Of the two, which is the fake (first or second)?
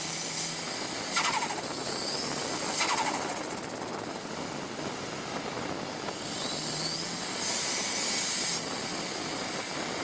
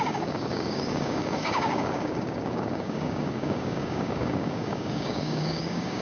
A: second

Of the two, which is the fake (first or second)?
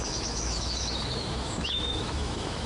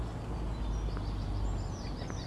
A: first